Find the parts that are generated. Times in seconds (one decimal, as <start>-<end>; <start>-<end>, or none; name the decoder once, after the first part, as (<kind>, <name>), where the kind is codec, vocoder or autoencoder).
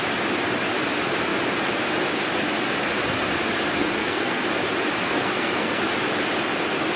3.8-4.4 (codec, SNAC); 5.0-5.8